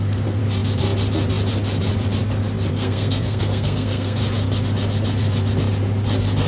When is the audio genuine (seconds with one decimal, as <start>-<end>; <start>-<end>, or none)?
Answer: 0.4-2.7; 4.2-6.5